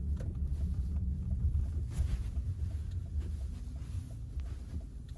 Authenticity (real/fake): real